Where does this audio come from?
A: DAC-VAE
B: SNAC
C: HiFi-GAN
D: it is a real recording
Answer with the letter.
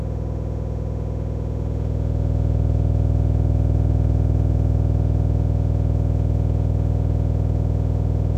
A